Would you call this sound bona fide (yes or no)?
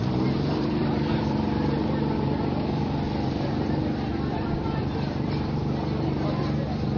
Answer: no